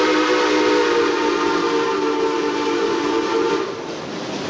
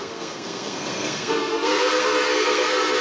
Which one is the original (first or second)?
first